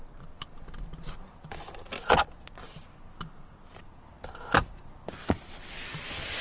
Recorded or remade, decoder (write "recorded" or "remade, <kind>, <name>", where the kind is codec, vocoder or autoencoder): recorded